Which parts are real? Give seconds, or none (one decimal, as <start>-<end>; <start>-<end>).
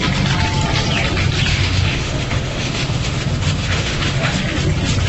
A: 0.0-1.5; 4.4-5.1